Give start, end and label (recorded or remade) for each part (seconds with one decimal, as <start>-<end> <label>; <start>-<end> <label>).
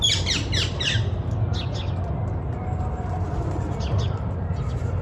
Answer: 0.0-5.0 recorded